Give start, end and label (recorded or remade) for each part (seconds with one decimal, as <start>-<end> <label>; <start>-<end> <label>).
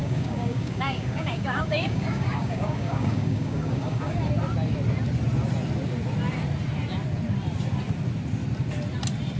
0.0-4.3 remade; 4.3-9.4 recorded